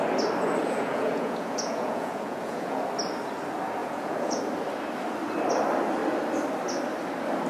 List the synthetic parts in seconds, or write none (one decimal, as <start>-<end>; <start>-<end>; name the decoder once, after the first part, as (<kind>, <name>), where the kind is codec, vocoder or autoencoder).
0.6-2.8 (vocoder, Vocos); 3.8-4.4